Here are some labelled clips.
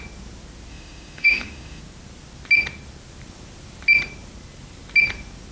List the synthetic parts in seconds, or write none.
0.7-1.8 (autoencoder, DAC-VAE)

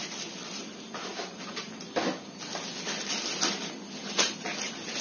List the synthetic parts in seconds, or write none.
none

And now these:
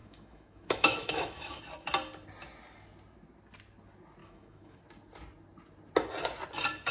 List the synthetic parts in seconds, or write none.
0.0-1.6 (autoencoder, DAC-VAE); 4.2-4.8

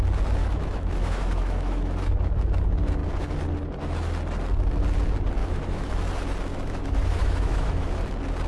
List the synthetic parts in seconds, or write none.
0.4-2.0 (autoencoder, DAC-VAE); 5.4-5.9; 6.5-8.0

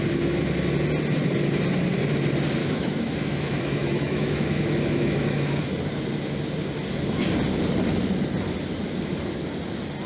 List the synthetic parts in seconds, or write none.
2.6-5.6 (autoencoder, DAC-VAE)

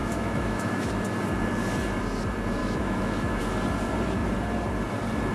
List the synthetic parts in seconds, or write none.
0.0-0.9 (autoencoder, DAC-VAE); 2.6-3.4

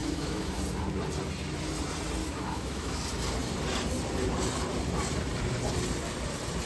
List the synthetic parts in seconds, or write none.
0.0-0.5 (autoencoder, DAC-VAE); 2.2-3.0

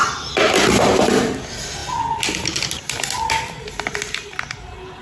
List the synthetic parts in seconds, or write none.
none